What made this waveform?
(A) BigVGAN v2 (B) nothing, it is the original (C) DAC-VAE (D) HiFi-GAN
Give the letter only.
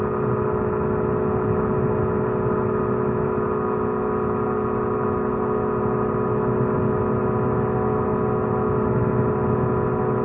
B